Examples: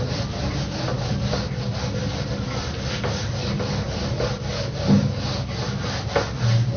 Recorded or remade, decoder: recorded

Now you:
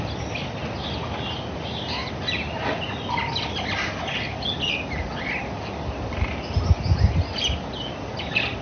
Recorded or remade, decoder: recorded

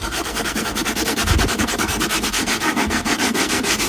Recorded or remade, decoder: remade, codec, SNAC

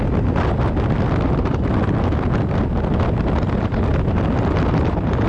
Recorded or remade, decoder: recorded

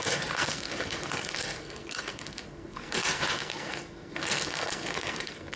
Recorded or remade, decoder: remade, codec, SNAC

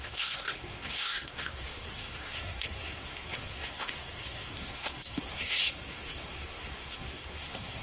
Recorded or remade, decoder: remade, codec, SNAC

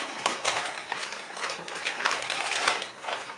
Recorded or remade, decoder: remade, codec, SNAC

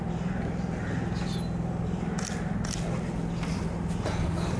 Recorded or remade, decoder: recorded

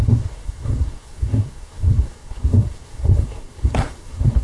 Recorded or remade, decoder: remade, codec, SNAC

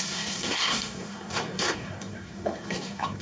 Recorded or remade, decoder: remade, codec, SNAC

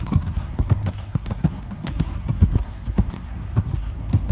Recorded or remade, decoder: remade, codec, SNAC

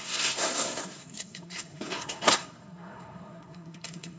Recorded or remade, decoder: remade, codec, SNAC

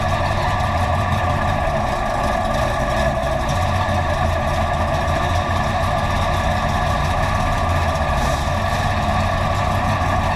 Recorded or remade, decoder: recorded